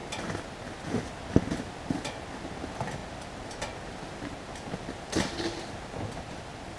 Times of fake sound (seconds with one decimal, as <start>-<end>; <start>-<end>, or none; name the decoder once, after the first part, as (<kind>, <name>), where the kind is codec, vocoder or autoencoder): none